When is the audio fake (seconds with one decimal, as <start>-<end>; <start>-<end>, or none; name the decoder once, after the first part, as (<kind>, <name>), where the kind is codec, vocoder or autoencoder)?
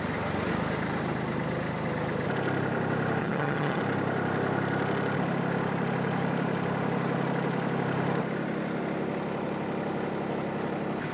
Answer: 3.2-3.8 (vocoder, HiFi-GAN)